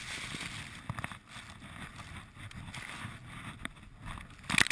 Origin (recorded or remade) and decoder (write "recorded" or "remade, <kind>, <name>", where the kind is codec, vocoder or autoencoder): recorded